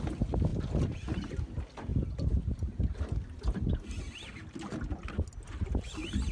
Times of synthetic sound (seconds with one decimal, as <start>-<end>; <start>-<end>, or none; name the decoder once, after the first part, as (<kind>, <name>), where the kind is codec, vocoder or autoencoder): none